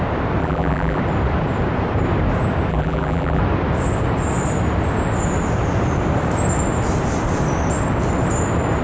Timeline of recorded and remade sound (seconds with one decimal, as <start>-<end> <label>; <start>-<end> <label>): 0.0-0.4 recorded; 0.4-1.0 remade; 1.0-2.7 recorded; 2.7-3.4 remade; 3.4-8.8 recorded